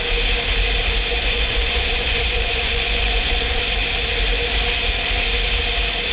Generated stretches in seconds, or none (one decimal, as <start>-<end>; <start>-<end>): 1.1-3.6